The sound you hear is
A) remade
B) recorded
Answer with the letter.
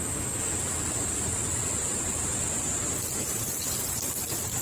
B